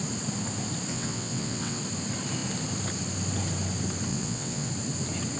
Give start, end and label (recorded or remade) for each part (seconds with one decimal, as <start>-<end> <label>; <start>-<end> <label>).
0.0-0.9 recorded; 0.9-1.8 remade; 1.8-4.1 recorded; 4.1-4.7 remade; 4.7-5.4 recorded